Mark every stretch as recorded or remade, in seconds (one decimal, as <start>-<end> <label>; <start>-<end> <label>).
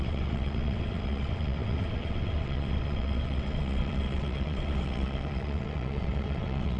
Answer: 0.0-6.8 remade